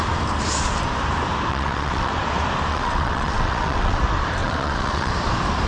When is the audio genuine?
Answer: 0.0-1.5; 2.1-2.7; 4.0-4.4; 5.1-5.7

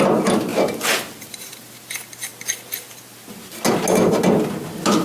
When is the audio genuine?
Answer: 0.0-5.0

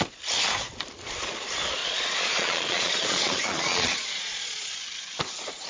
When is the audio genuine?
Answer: 0.0-1.8; 4.7-5.7

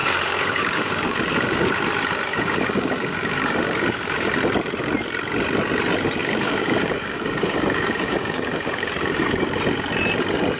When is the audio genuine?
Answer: 1.7-2.3; 4.1-6.2; 9.2-10.6

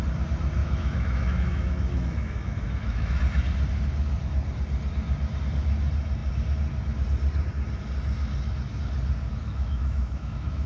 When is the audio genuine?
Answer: 0.0-0.6; 3.2-9.4